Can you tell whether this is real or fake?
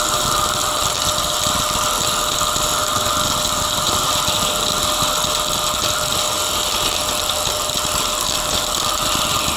real